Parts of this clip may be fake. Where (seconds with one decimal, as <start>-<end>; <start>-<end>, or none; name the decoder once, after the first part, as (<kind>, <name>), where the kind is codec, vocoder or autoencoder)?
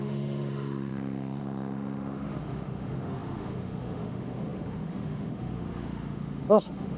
0.0-7.0 (autoencoder, DAC-VAE)